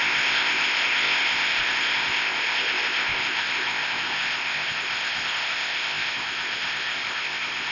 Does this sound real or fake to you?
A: fake